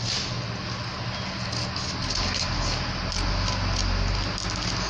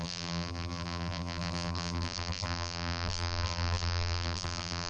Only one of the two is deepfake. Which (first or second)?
second